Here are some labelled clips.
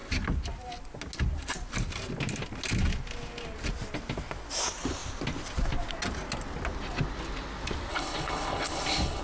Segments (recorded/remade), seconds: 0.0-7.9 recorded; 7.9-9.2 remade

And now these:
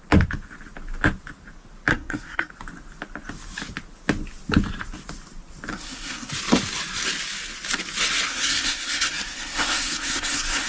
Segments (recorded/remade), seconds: 0.0-1.9 recorded; 1.9-2.5 remade; 2.5-5.7 recorded; 5.7-6.3 remade; 6.3-8.3 recorded; 8.3-10.7 remade

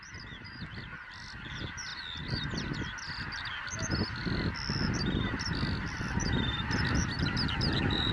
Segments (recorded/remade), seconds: 0.0-8.1 recorded

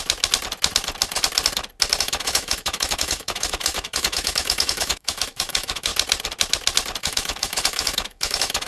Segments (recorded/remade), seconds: 0.0-2.0 recorded; 2.0-5.9 remade; 5.9-7.0 recorded; 7.0-8.7 remade

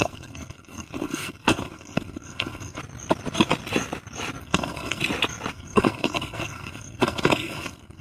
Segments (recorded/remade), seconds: 0.0-2.8 remade; 2.8-4.4 recorded; 4.4-5.0 remade; 5.0-5.5 recorded; 5.5-8.0 remade